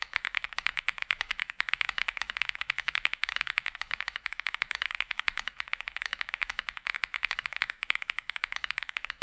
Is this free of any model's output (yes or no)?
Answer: no